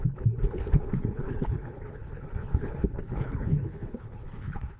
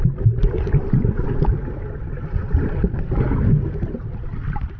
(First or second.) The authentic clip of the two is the second